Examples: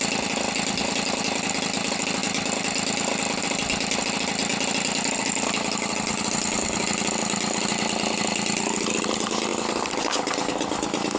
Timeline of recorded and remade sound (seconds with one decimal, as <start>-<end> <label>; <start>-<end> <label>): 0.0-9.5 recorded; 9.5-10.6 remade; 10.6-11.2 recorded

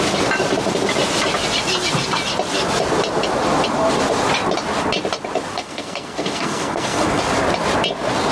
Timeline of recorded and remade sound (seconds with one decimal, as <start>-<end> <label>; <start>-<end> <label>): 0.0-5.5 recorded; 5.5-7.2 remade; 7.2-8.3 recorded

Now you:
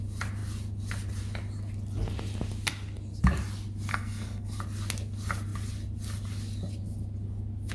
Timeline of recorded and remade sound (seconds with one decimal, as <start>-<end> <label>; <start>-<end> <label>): 0.0-3.9 recorded; 3.9-4.6 remade; 4.6-7.7 recorded